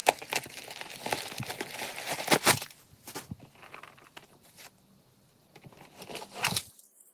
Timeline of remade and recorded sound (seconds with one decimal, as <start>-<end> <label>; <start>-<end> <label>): 0.0-7.1 recorded